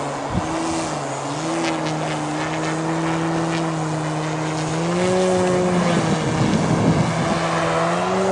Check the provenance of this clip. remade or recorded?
recorded